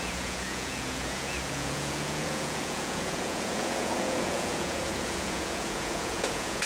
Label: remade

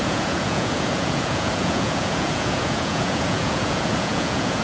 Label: remade